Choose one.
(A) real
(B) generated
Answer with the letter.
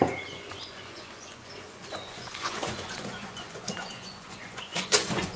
B